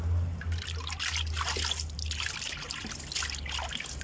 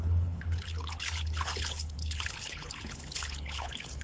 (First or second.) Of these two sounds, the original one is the first